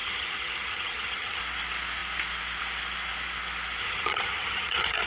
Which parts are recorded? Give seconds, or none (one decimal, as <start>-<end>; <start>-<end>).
1.4-3.8